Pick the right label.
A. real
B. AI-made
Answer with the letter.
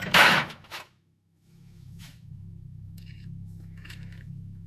B